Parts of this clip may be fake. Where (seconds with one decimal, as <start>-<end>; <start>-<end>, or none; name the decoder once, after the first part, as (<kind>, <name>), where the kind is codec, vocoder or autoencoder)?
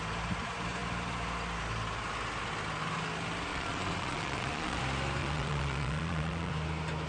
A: 3.5-4.8 (vocoder, Vocos); 5.2-6.5